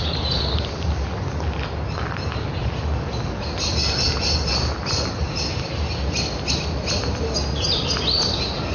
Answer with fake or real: real